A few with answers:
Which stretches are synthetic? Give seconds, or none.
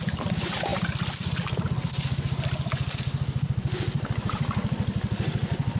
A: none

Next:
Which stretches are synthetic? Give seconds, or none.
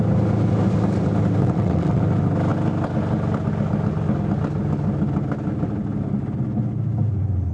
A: 1.4-2.0 (vocoder, WaveNeXt)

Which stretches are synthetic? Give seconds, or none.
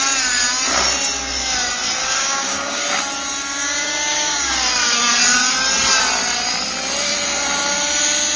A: 2.0-2.9 (codec, DAC); 3.6-4.5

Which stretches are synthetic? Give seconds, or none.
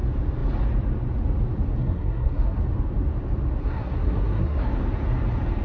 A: 1.8-2.6 (codec, SNAC); 3.6-4.7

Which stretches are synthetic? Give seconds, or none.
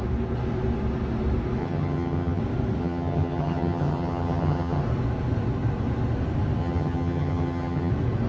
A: 1.6-2.4 (vocoder, HiFi-GAN); 2.8-4.8; 6.6-7.9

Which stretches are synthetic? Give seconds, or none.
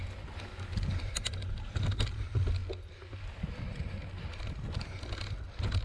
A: none